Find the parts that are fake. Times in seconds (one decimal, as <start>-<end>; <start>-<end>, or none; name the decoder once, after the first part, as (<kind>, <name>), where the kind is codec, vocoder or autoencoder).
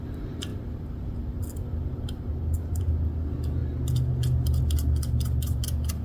none